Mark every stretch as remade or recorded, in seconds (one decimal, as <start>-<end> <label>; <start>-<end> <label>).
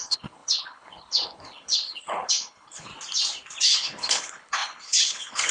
0.0-2.9 remade; 2.9-3.6 recorded; 3.6-5.5 remade